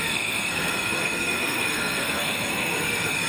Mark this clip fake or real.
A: fake